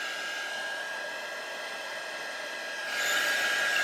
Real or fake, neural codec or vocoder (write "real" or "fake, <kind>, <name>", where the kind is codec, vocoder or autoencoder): real